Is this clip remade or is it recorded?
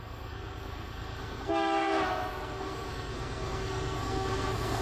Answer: remade